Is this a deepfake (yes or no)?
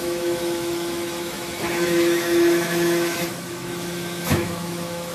yes